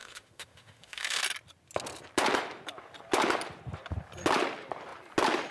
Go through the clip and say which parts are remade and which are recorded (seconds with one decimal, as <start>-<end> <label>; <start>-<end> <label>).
0.0-1.2 remade; 1.2-5.5 recorded